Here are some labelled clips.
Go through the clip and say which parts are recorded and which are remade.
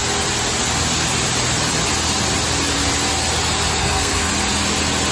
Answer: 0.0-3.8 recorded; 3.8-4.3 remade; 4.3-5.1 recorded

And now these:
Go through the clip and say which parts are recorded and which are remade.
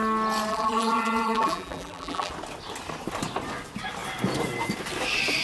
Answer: 0.0-0.5 recorded; 0.5-2.3 remade; 2.3-5.4 recorded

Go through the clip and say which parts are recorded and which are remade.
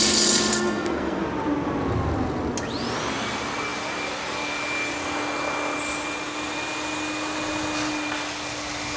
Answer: 0.0-0.5 recorded; 0.5-1.2 remade; 1.2-9.0 recorded